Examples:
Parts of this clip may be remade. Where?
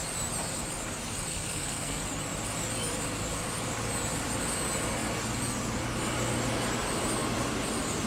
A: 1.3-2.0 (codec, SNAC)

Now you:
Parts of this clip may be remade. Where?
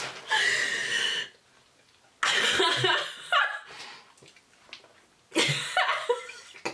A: none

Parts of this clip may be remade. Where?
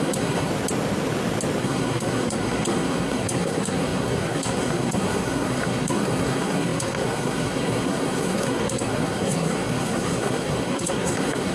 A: 0.0-0.5 (codec, SNAC); 1.6-11.5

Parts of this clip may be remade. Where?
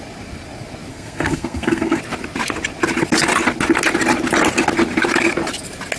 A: 0.9-2.0 (codec, SNAC)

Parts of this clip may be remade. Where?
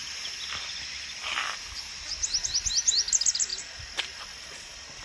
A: none